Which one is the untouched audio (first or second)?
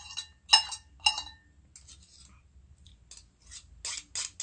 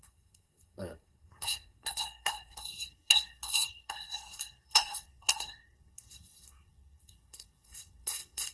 first